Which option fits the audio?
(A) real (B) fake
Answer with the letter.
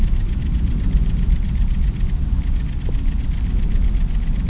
A